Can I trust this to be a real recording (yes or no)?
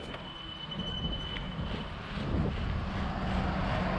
yes